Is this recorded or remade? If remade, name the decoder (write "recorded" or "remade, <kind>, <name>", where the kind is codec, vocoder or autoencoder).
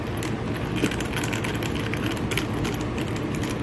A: recorded